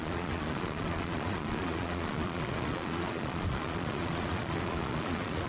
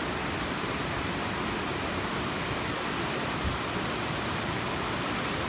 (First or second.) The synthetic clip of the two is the first